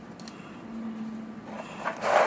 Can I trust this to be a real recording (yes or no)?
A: yes